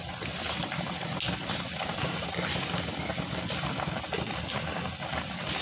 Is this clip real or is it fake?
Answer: real